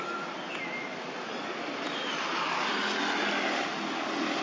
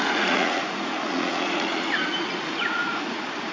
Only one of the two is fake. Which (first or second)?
second